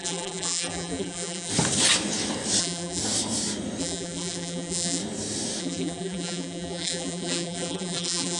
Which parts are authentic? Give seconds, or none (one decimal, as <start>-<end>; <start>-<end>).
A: 1.5-2.6; 3.0-3.8; 5.0-5.6

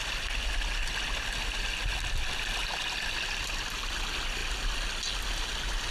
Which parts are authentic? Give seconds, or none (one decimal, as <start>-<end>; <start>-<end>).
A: 0.0-2.6; 3.9-5.9

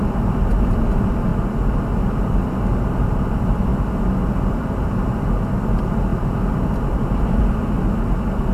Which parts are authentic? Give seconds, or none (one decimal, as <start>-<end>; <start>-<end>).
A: 0.0-1.3; 1.8-6.1; 7.7-8.5

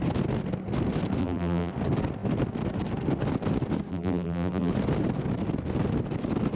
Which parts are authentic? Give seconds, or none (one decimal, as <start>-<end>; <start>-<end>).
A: 0.0-1.2; 1.7-3.9; 4.7-6.6

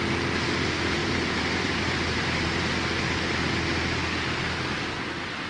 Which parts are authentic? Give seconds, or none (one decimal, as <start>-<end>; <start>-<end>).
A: 0.0-1.0; 2.6-5.5

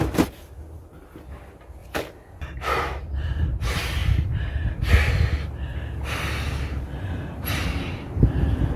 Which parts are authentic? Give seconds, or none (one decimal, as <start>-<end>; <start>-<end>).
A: 0.0-1.8; 3.4-8.8